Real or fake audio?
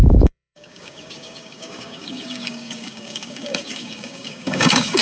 fake